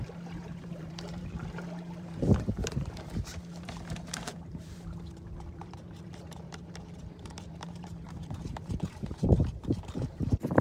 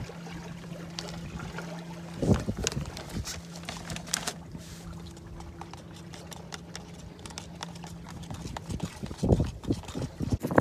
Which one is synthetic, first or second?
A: first